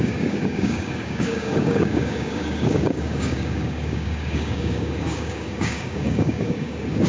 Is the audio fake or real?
fake